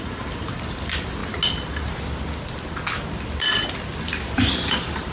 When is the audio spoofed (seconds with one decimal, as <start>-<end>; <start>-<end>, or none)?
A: 0.0-1.2; 4.3-5.1